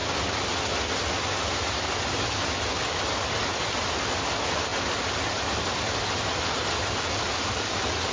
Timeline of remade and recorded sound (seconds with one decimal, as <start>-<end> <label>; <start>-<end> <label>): 0.0-8.1 recorded